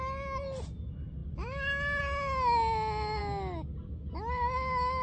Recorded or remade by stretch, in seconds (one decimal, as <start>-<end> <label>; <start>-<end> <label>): 0.0-5.0 recorded